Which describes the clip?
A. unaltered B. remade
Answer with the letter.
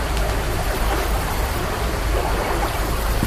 B